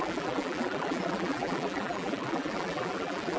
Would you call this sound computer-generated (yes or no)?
yes